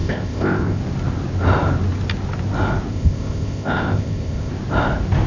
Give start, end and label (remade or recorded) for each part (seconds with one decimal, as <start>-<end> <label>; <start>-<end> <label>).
0.0-0.8 remade; 0.8-2.9 recorded; 2.9-4.5 remade; 4.5-5.3 recorded